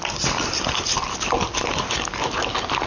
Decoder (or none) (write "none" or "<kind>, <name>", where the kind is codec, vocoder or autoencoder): none